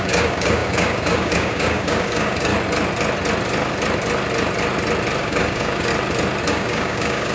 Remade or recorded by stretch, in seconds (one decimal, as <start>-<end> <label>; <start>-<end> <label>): 0.0-2.5 remade; 2.5-5.2 recorded; 5.2-5.9 remade; 5.9-6.5 recorded; 6.5-7.3 remade